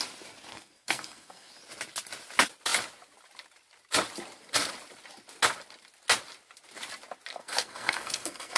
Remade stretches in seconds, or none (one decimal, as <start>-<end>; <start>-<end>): 0.5-1.5; 7.3-8.6